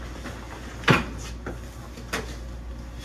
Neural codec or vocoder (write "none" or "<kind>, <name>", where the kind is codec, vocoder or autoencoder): none